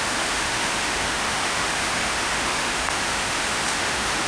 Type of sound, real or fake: fake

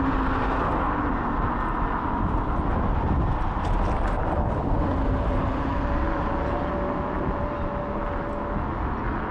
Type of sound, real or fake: real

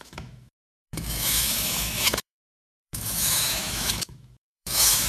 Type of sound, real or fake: fake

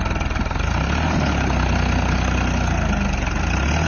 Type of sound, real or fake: real